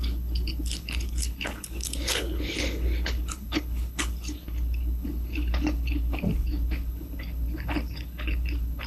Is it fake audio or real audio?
fake